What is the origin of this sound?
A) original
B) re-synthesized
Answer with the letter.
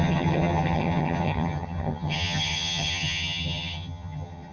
B